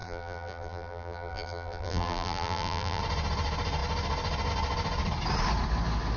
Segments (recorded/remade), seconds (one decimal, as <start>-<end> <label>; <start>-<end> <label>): 0.0-3.0 remade; 3.0-6.2 recorded